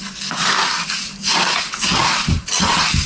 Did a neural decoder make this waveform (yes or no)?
no